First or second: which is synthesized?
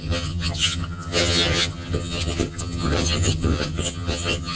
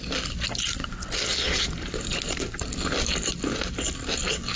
first